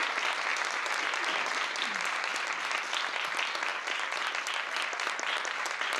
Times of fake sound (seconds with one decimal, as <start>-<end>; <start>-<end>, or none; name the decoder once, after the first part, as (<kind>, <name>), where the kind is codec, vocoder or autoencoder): none